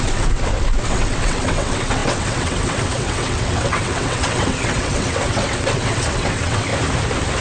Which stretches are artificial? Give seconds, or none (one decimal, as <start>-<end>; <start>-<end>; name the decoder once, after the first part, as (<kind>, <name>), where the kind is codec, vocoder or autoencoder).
0.0-6.7 (vocoder, WaveNeXt)